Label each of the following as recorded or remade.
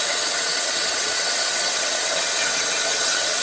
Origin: remade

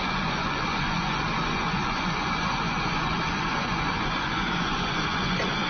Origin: remade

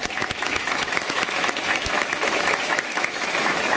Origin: remade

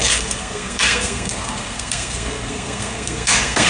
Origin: remade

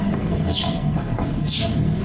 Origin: remade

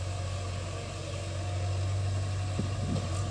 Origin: recorded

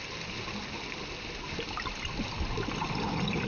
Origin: recorded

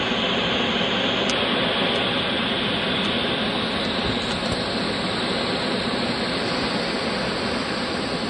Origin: recorded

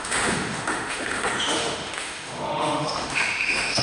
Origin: remade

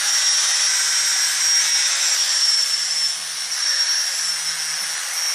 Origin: recorded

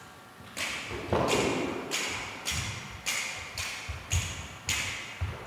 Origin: recorded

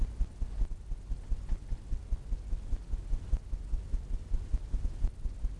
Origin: recorded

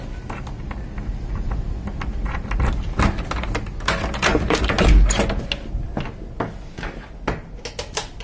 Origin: recorded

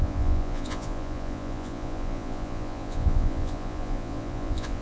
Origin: remade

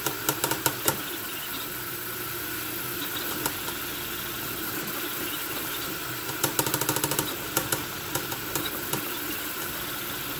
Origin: recorded